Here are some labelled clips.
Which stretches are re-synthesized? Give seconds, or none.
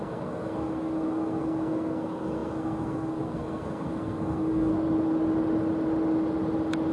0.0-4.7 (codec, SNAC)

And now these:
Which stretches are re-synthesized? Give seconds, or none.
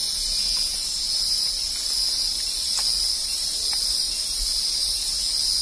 none